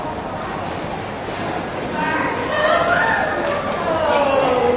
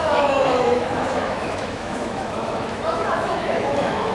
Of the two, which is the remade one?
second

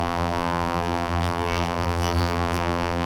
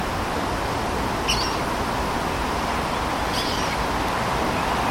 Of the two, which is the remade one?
first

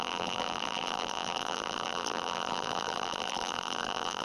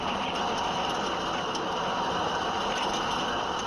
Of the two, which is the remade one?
first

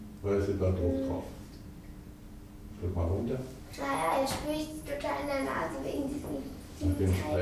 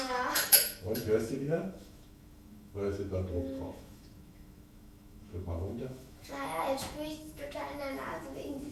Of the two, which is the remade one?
second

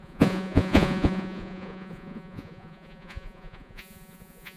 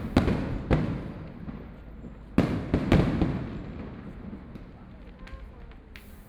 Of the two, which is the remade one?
first